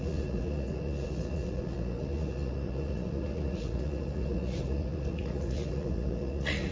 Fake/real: fake